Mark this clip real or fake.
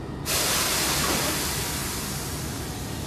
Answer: real